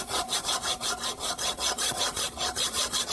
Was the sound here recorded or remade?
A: remade